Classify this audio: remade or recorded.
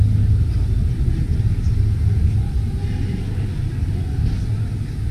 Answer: recorded